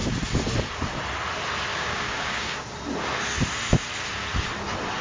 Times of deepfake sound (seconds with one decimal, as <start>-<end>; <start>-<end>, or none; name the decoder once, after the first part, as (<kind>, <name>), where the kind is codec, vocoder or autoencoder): 1.7-2.7 (codec, DAC)